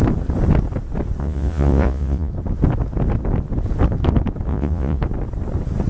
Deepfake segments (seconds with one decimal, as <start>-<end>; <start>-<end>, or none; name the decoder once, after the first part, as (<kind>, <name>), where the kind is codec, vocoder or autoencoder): 1.2-2.3 (vocoder, Vocos); 4.5-5.0